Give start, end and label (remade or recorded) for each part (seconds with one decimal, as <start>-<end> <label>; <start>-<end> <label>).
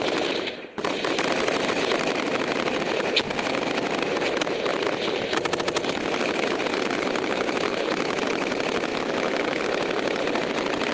0.0-8.9 recorded; 8.9-9.6 remade; 9.6-10.9 recorded